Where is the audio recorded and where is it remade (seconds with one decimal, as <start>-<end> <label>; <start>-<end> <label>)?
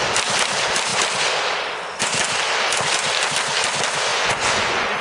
0.0-4.1 recorded; 4.1-5.0 remade